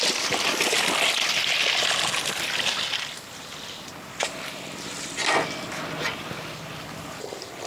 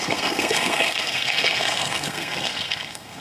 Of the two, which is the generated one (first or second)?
second